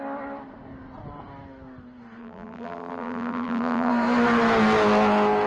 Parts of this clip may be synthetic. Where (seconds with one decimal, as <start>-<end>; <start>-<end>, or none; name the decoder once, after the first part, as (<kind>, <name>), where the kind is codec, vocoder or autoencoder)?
2.2-3.9 (vocoder, BigVGAN v2)